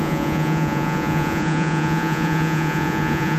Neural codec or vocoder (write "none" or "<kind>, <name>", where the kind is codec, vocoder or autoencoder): vocoder, Vocos